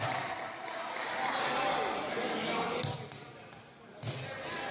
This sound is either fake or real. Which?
real